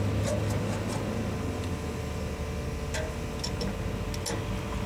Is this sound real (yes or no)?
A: yes